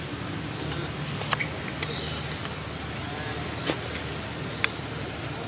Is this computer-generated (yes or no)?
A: no